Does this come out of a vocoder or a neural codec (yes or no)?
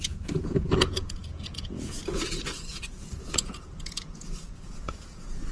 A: yes